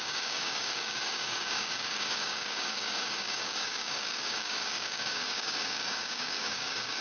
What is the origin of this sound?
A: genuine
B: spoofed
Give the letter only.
B